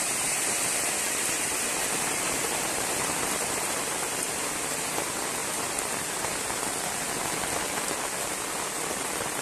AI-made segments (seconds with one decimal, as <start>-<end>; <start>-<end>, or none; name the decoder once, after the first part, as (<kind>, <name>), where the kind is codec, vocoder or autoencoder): none